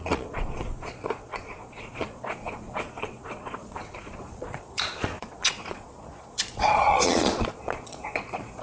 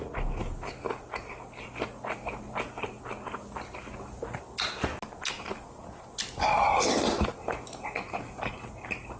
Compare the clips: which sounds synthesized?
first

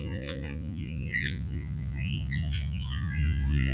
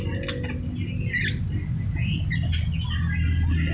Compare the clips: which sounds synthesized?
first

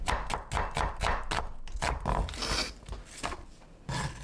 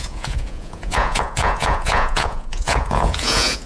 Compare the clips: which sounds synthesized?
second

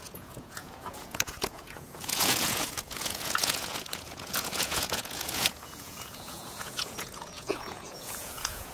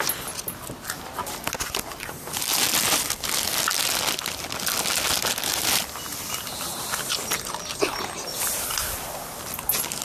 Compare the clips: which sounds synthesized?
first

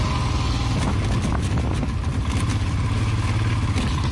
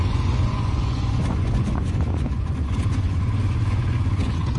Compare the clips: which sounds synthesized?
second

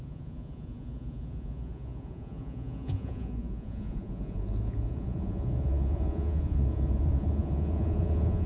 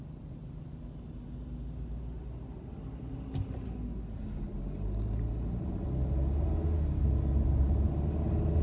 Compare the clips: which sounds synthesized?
first